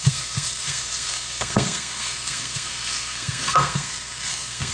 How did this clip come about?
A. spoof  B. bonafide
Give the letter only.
A